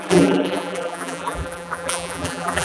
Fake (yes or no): yes